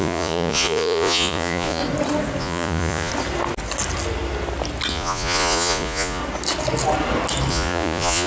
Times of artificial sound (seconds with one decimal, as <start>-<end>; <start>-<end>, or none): 0.0-1.8; 2.4-3.1; 4.9-6.2; 7.5-8.3